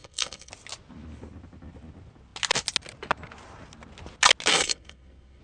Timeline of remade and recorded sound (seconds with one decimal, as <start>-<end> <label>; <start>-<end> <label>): 0.0-0.5 remade; 0.5-4.5 recorded; 4.5-5.4 remade